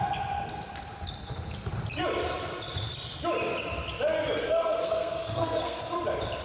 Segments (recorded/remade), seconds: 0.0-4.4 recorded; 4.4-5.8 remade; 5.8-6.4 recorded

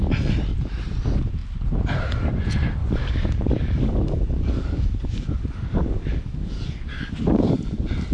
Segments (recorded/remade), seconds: 0.0-2.8 recorded; 2.8-7.5 remade; 7.5-8.1 recorded

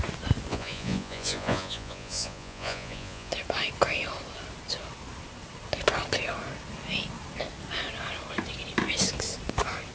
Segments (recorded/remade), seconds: 0.0-0.5 recorded; 0.5-3.3 remade; 3.3-9.9 recorded

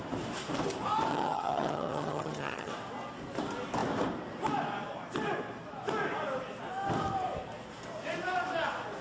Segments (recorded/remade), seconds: 0.0-1.1 recorded; 1.1-2.7 remade; 2.7-9.0 recorded

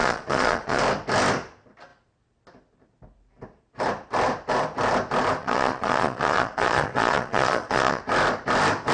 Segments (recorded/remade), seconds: 0.0-0.8 remade; 0.8-5.4 recorded; 5.4-8.0 remade; 8.0-8.9 recorded

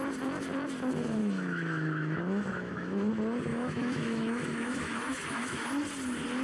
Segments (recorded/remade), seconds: 0.0-1.2 recorded; 1.2-3.1 remade; 3.1-3.5 recorded; 3.5-5.7 remade; 5.7-6.4 recorded